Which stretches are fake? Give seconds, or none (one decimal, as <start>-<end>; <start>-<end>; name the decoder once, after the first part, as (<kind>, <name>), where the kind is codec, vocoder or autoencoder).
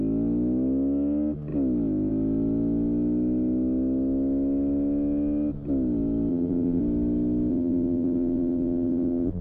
6.3-6.8 (vocoder, BigVGAN v2); 7.5-9.4